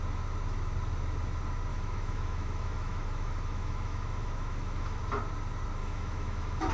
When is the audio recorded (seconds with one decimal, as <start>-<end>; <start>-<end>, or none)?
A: 0.0-1.7; 5.0-5.8